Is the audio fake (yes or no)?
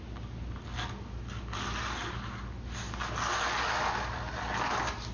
no